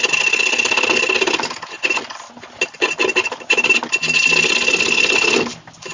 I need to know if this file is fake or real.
real